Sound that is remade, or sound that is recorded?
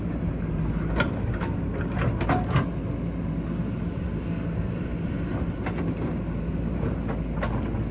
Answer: recorded